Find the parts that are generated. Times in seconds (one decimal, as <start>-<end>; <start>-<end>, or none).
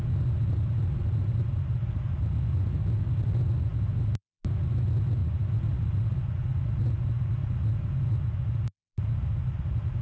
none